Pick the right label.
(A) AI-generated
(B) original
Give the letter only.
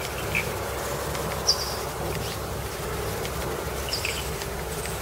B